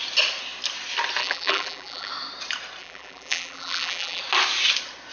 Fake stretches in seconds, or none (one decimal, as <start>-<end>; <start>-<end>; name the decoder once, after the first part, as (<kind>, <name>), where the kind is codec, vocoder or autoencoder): 1.2-2.1 (vocoder, BigVGAN v2); 2.8-4.2